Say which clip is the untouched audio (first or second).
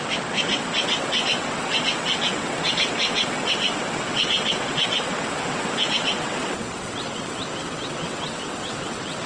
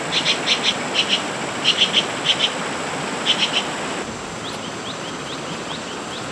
second